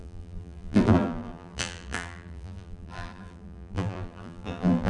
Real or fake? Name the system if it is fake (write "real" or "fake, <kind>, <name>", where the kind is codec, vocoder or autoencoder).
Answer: fake, vocoder, BigVGAN v2